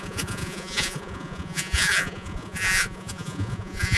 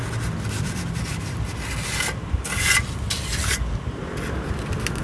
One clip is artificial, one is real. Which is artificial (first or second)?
first